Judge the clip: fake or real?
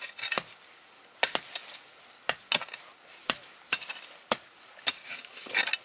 real